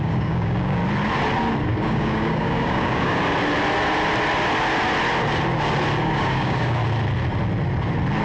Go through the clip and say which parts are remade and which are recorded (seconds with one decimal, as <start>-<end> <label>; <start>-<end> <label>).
0.0-0.8 remade; 0.8-1.7 recorded; 1.7-3.2 remade; 3.2-6.0 recorded; 6.0-6.8 remade; 6.8-8.2 recorded